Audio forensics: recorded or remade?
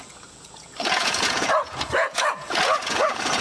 remade